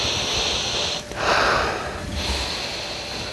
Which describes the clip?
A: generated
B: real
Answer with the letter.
B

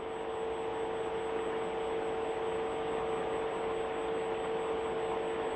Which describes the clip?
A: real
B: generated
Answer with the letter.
A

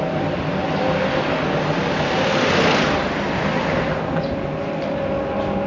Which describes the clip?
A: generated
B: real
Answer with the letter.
B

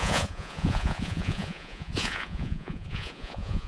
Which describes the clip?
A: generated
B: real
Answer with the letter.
A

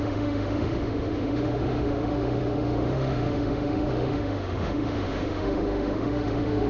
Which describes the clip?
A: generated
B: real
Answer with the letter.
A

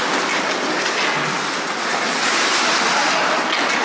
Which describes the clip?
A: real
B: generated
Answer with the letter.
A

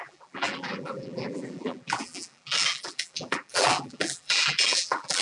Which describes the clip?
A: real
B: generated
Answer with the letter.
B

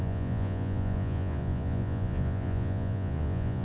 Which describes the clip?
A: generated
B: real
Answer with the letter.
A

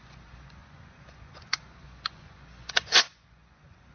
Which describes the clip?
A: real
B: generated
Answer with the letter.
B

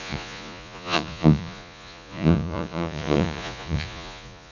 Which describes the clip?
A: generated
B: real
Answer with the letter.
A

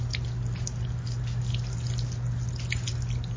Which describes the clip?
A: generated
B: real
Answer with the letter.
B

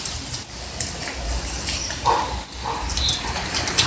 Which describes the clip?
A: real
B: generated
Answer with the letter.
A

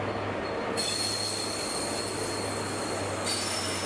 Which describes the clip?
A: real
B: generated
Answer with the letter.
A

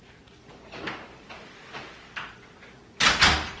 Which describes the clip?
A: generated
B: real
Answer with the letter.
B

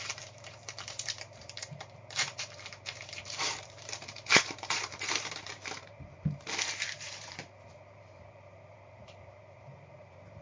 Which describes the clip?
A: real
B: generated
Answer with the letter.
B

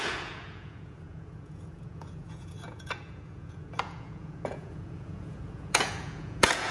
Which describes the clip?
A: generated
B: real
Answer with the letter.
A